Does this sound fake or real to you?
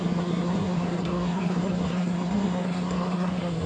fake